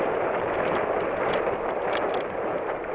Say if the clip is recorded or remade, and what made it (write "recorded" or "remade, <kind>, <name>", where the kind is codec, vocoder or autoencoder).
recorded